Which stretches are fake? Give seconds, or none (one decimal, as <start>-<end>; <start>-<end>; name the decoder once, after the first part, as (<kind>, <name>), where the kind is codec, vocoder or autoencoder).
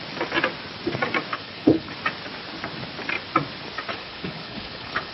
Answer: 1.3-1.9 (codec, HILCodec); 3.9-5.1